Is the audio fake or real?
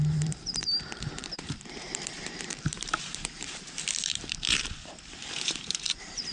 fake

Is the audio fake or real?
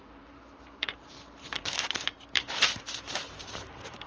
fake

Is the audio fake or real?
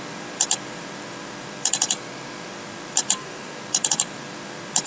fake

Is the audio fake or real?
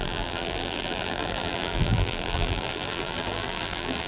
fake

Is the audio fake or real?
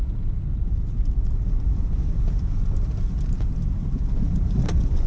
fake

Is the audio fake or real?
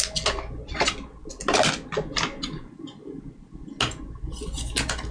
real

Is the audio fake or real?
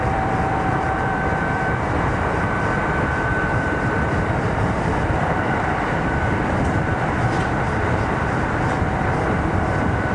fake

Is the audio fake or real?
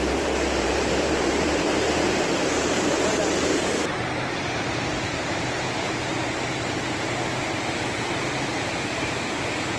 fake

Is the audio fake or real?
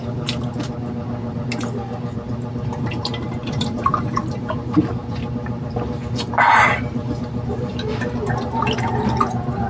fake